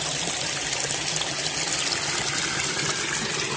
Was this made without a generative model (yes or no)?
yes